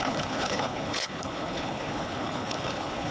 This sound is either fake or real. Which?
fake